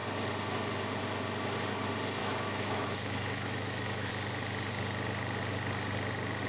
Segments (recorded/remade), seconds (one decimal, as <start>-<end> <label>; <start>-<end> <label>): 0.0-2.2 recorded; 2.2-4.1 remade; 4.1-6.5 recorded